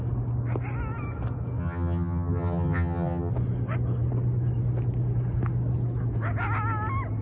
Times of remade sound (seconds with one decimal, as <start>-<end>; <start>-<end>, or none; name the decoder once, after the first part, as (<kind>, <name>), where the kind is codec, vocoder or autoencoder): 1.6-3.3 (vocoder, HiFi-GAN)